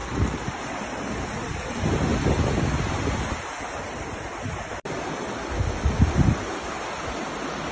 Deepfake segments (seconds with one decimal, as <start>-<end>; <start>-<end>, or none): none